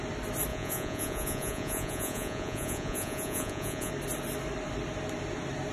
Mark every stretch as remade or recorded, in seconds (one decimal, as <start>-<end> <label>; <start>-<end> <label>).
0.0-0.5 recorded; 0.5-3.9 remade; 3.9-5.7 recorded